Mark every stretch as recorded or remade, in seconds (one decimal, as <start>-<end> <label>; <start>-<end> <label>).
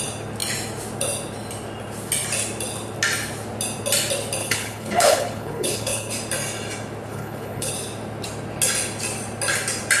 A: 0.0-4.4 recorded; 4.4-6.1 remade; 6.1-7.1 recorded; 7.1-7.7 remade; 7.7-10.0 recorded